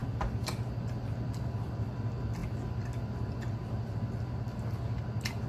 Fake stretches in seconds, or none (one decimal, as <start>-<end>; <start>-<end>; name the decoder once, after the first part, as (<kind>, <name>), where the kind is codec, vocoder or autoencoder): none